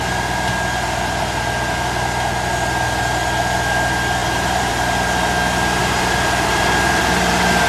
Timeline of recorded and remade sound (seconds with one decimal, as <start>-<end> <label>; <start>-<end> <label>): 0.0-4.2 recorded; 4.2-4.7 remade; 4.7-5.8 recorded; 5.8-7.0 remade; 7.0-7.7 recorded